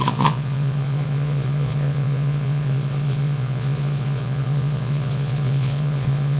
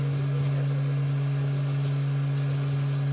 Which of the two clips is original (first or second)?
second